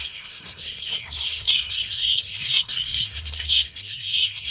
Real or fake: fake